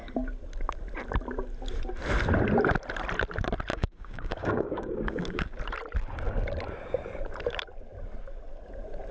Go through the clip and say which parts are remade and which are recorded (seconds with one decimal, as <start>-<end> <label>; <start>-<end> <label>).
0.0-3.7 recorded; 3.7-5.6 remade; 5.6-9.1 recorded